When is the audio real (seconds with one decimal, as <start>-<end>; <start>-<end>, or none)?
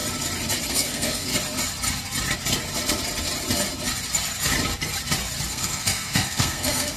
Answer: 0.0-0.7; 1.3-5.5